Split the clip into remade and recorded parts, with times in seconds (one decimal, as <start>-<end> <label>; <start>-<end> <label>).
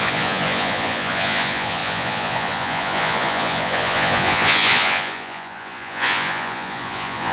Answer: 0.0-7.3 remade